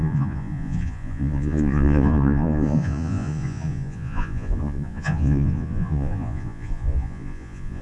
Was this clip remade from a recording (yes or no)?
yes